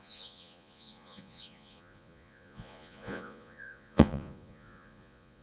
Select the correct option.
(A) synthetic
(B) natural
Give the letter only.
A